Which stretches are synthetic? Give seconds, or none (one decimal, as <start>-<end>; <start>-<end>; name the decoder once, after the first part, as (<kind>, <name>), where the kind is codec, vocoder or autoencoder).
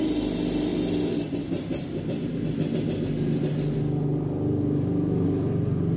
none